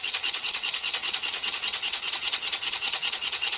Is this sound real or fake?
fake